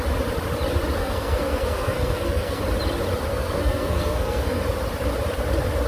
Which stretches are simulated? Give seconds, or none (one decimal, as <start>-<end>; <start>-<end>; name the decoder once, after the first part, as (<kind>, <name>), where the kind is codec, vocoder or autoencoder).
1.0-2.6 (codec, SNAC); 3.3-4.6